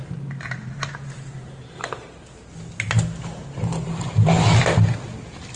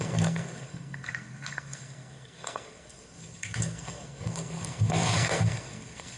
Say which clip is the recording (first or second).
first